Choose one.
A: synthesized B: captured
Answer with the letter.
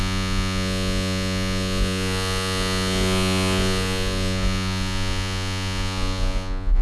A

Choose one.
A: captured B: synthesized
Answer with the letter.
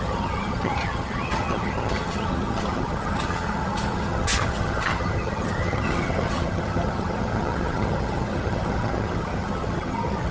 B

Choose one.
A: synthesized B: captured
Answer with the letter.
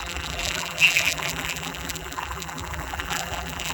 A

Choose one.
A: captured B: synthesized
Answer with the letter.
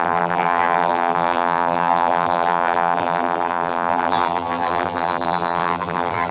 B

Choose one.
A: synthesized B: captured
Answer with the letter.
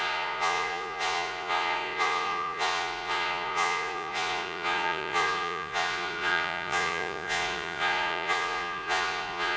A